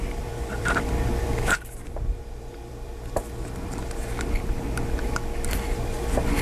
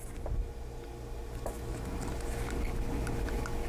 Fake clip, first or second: first